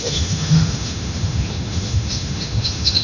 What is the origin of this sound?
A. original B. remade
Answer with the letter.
B